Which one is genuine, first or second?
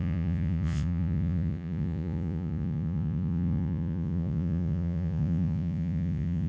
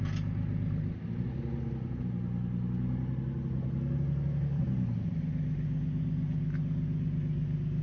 second